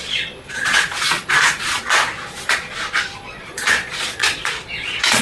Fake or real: fake